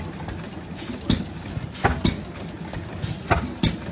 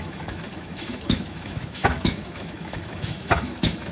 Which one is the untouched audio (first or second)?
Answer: first